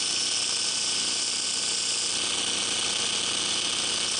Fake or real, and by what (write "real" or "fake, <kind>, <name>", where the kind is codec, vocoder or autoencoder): real